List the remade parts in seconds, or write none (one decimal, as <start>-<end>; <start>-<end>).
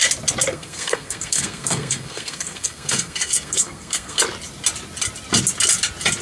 0.5-4.2